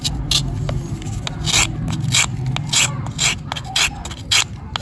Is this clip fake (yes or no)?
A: no